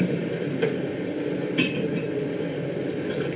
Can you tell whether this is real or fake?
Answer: real